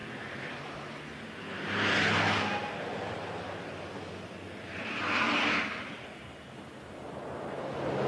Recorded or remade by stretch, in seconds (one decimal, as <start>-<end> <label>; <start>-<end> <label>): 0.0-8.1 recorded